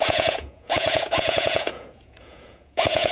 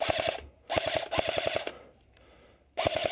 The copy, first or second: first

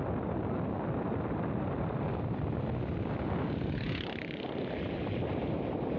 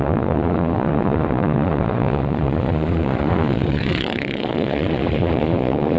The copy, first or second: second